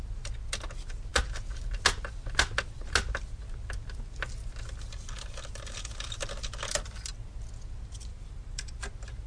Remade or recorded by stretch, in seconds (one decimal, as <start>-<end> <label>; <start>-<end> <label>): 0.0-8.1 recorded; 8.1-8.8 remade; 8.8-9.3 recorded